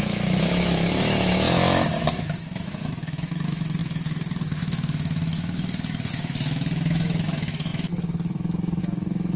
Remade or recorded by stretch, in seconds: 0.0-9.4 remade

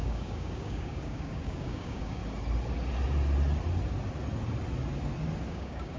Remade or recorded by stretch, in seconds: 0.0-2.2 remade; 2.2-5.5 recorded; 5.5-6.0 remade

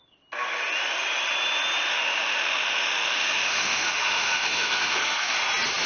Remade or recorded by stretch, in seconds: 0.0-1.9 recorded; 1.9-5.4 remade; 5.4-5.9 recorded

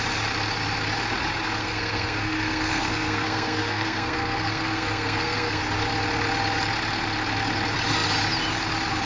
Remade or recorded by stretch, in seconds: 0.0-1.6 recorded; 1.6-5.6 remade; 5.6-9.1 recorded

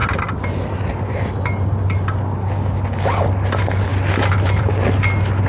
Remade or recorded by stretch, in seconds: 0.0-5.5 recorded

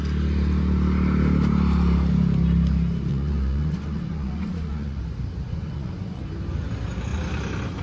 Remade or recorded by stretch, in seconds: 0.0-3.1 recorded; 3.1-5.0 remade; 5.0-5.5 recorded; 5.5-6.2 remade; 6.2-7.8 recorded

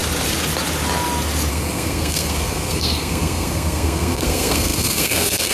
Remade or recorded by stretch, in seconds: 0.0-1.5 recorded; 1.5-5.5 remade